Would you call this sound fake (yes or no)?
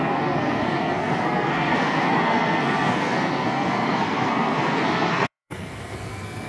yes